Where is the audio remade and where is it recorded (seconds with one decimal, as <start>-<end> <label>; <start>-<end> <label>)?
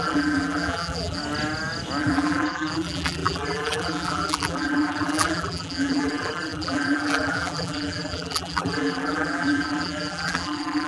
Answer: 0.0-1.2 remade; 1.2-2.0 recorded; 2.0-10.9 remade